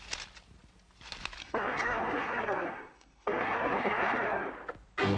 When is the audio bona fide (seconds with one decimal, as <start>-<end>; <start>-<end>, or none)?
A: 0.0-1.4; 4.5-5.2